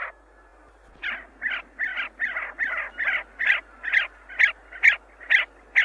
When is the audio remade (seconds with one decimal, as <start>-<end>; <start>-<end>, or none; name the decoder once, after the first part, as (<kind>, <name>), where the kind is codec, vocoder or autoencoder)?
none